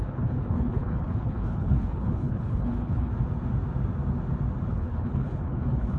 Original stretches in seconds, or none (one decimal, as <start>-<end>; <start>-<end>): 3.1-4.7